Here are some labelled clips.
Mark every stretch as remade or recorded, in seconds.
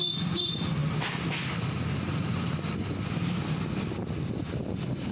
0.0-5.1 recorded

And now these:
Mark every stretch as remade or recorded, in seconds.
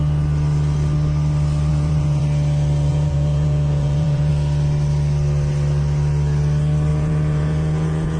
0.0-1.7 recorded; 1.7-2.2 remade; 2.2-2.9 recorded; 2.9-4.3 remade; 4.3-6.9 recorded; 6.9-8.2 remade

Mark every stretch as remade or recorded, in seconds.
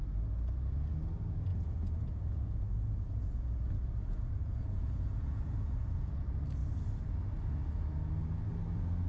0.0-1.5 recorded; 1.5-6.1 remade; 6.1-9.1 recorded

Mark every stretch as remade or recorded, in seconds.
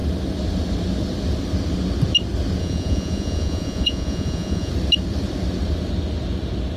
0.0-2.6 recorded; 2.6-4.7 remade; 4.7-6.8 recorded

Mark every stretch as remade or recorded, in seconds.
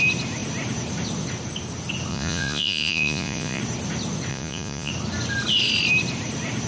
0.0-2.1 recorded; 2.1-3.6 remade; 3.6-4.3 recorded; 4.3-4.9 remade; 4.9-6.7 recorded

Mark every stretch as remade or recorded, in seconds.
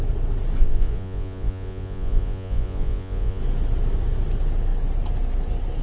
0.0-0.6 recorded; 0.6-3.4 remade; 3.4-5.8 recorded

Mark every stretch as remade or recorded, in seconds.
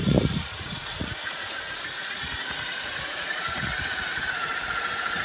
0.0-5.2 remade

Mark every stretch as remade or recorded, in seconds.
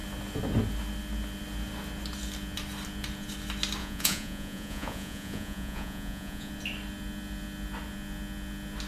0.0-3.8 recorded; 3.8-6.5 remade; 6.5-8.9 recorded